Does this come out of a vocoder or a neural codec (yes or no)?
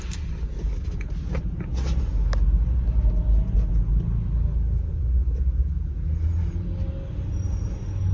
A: no